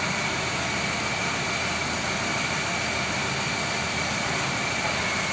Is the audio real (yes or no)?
yes